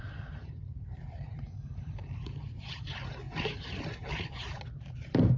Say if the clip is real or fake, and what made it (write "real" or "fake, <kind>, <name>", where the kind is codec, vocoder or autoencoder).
fake, vocoder, BigVGAN v2